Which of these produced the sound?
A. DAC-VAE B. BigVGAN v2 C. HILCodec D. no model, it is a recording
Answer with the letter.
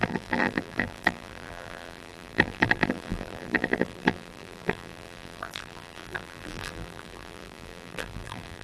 B